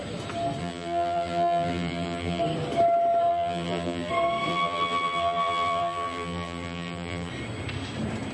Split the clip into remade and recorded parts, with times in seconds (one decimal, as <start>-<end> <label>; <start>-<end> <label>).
0.0-0.6 recorded; 0.6-2.4 remade; 2.4-3.3 recorded; 3.3-4.1 remade; 4.1-4.5 recorded; 4.5-7.3 remade; 7.3-8.3 recorded